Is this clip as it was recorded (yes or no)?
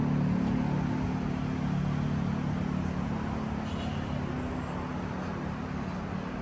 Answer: yes